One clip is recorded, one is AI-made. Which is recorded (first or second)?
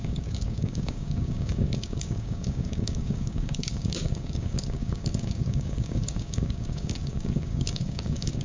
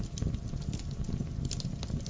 second